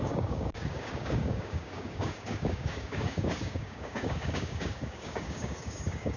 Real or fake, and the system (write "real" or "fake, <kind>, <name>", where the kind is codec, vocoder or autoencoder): fake, codec, DAC